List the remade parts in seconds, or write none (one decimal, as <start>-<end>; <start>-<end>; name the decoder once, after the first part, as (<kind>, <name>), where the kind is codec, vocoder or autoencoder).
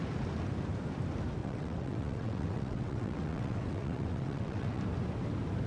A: 1.4-4.8 (vocoder, WaveNeXt)